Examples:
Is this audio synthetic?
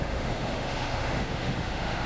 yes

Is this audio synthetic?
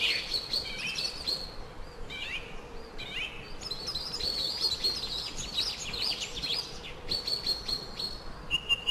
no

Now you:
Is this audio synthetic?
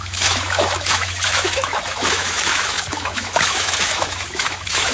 yes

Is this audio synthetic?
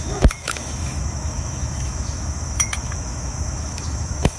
yes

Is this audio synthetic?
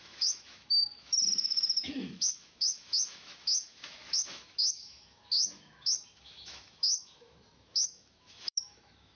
yes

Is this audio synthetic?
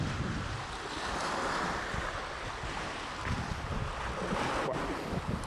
no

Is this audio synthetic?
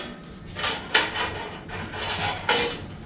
no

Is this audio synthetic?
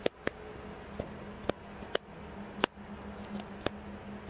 no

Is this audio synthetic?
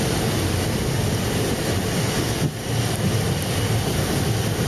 no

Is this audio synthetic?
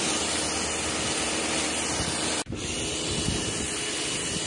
no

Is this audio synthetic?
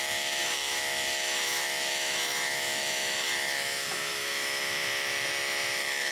yes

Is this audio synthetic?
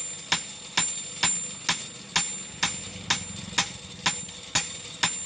no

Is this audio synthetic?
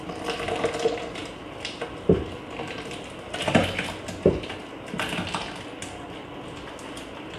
no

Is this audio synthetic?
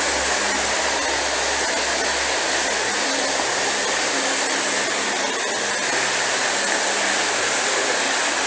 no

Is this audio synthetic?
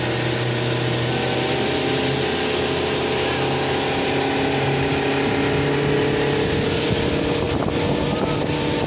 no